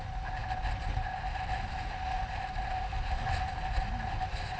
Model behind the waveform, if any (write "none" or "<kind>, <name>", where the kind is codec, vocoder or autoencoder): none